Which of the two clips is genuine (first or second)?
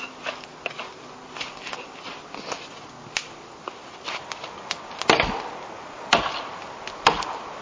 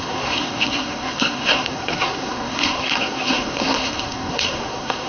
first